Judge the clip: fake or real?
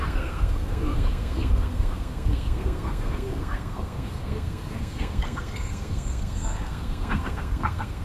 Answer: fake